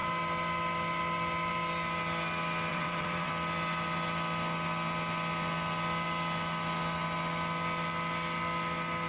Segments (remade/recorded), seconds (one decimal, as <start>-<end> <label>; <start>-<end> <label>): 0.0-2.7 recorded; 2.7-3.3 remade; 3.3-9.1 recorded